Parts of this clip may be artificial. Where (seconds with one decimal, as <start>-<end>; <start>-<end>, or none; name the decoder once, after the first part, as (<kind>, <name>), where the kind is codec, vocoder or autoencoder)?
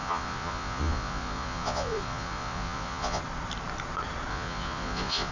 0.0-3.2 (vocoder, Vocos); 4.3-5.3